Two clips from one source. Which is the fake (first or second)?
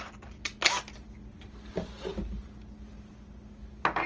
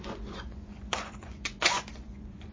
second